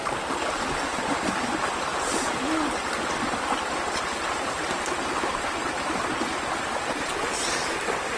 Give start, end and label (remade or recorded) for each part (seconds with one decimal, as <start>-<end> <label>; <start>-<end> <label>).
0.0-8.2 recorded

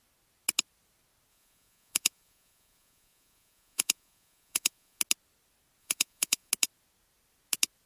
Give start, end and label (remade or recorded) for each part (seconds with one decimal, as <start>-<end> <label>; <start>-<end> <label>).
0.0-1.3 recorded; 1.3-5.0 remade; 5.0-5.8 recorded; 5.8-6.5 remade; 6.5-7.9 recorded

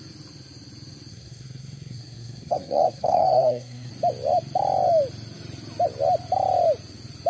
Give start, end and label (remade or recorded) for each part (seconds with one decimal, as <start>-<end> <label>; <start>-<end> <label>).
0.0-1.1 recorded; 1.1-3.9 remade; 3.9-7.3 recorded

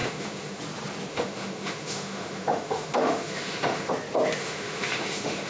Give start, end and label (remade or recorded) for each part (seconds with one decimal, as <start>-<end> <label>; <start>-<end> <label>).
0.0-0.6 remade; 0.6-1.1 recorded; 1.1-3.9 remade; 3.9-4.4 recorded; 4.4-5.5 remade

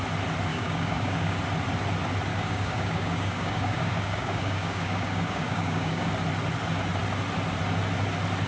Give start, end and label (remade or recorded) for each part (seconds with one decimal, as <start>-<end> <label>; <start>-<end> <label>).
0.0-0.5 recorded; 0.5-1.4 remade; 1.4-2.3 recorded; 2.3-6.1 remade; 6.1-8.5 recorded

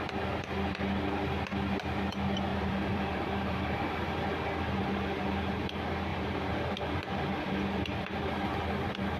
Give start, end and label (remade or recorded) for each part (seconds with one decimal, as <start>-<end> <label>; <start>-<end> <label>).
0.0-2.5 recorded; 2.5-3.8 remade; 3.8-6.1 recorded; 6.1-7.2 remade; 7.2-9.2 recorded

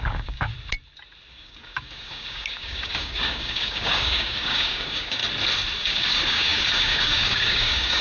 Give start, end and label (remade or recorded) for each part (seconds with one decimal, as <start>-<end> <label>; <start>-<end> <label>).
0.0-0.5 remade; 0.5-1.3 recorded; 1.3-5.2 remade; 5.2-5.8 recorded; 5.8-8.0 remade

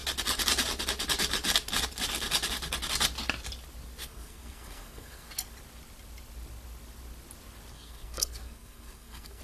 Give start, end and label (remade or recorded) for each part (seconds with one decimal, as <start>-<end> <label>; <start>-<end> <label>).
0.0-4.0 recorded; 4.0-5.3 remade; 5.3-7.7 recorded; 7.7-9.4 remade